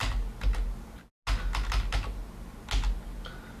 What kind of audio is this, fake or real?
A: real